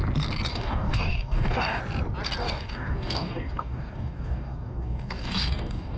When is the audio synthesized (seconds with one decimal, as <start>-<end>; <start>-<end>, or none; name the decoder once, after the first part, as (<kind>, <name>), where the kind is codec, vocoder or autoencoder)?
0.5-1.8 (codec, DAC); 2.4-6.0